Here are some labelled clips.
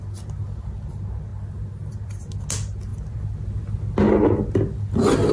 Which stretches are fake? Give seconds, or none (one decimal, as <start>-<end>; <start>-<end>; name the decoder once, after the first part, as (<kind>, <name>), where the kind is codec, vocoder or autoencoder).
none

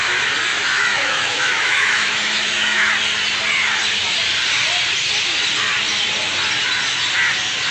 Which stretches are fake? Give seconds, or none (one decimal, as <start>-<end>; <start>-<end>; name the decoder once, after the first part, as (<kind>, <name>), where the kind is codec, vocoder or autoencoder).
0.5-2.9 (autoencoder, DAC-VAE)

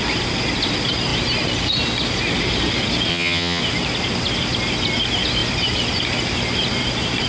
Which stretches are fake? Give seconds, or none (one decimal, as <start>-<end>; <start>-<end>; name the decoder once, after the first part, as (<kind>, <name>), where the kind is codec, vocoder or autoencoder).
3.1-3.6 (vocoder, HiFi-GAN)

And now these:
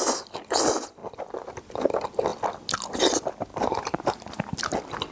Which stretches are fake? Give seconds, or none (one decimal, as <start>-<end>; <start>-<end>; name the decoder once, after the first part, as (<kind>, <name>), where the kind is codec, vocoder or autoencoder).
3.5-4.6 (vocoder, BigVGAN v2)